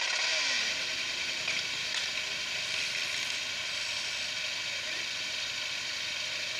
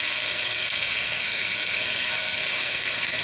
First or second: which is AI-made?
second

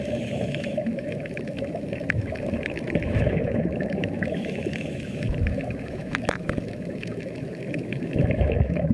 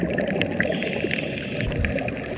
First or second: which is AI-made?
first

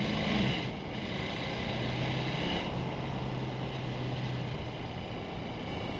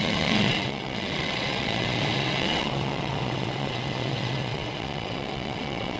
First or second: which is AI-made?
second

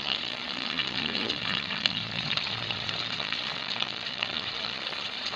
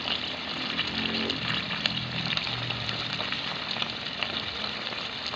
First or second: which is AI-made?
first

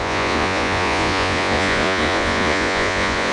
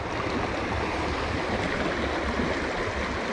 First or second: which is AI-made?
first